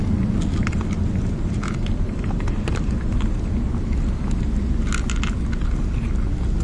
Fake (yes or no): no